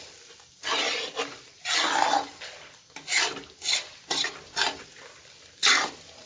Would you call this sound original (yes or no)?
yes